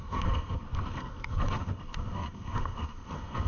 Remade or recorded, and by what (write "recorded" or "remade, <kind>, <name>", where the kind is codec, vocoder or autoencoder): remade, codec, SNAC